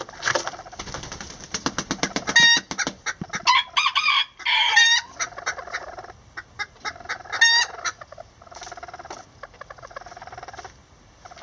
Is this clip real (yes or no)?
yes